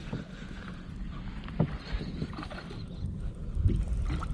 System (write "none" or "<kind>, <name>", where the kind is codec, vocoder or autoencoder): none